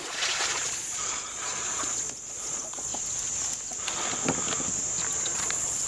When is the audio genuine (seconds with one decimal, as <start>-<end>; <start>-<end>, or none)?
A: 2.9-5.2